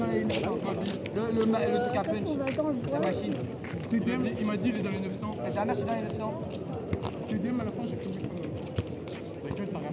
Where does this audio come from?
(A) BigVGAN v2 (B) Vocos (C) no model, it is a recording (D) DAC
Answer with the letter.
C